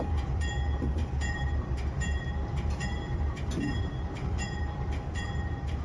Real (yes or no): no